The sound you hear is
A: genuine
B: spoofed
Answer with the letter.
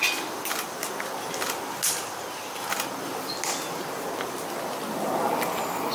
A